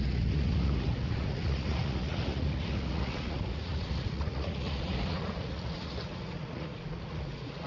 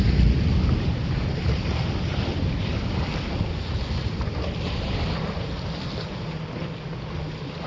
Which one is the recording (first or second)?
second